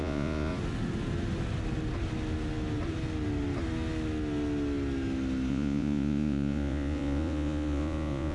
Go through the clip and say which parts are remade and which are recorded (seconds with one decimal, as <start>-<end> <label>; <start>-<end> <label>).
0.0-0.5 remade; 0.5-5.5 recorded; 5.5-8.3 remade

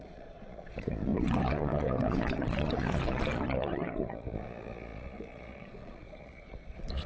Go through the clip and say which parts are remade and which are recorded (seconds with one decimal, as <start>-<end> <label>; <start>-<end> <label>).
0.0-7.1 remade

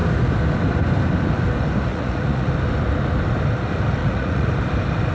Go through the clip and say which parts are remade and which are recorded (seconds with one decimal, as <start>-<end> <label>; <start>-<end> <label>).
0.0-1.9 recorded; 1.9-2.5 remade; 2.5-4.0 recorded; 4.0-4.5 remade; 4.5-5.1 recorded

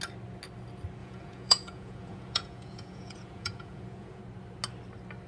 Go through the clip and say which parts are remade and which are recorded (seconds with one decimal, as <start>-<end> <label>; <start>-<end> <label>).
0.0-1.0 recorded; 1.0-4.2 remade; 4.2-5.3 recorded

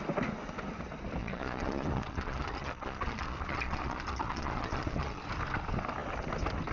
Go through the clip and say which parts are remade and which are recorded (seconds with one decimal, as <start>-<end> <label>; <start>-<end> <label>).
0.0-1.2 recorded; 1.2-5.2 remade; 5.2-6.7 recorded

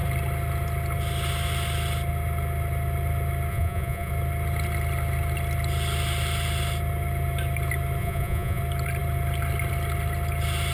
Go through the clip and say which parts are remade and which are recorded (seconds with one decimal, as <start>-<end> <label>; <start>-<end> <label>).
0.0-3.5 recorded; 3.5-4.1 remade; 4.1-8.0 recorded; 8.0-8.6 remade; 8.6-10.7 recorded

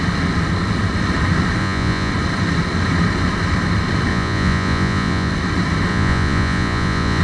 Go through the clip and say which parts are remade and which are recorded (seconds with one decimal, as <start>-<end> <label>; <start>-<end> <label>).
0.0-1.6 recorded; 1.6-2.1 remade; 2.1-4.1 recorded; 4.1-5.3 remade; 5.3-5.9 recorded; 5.9-7.2 remade

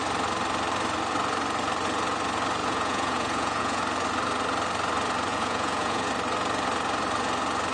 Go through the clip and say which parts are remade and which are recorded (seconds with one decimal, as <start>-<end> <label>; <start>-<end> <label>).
0.0-2.6 recorded; 2.6-3.8 remade; 3.8-5.3 recorded; 5.3-6.1 remade; 6.1-7.7 recorded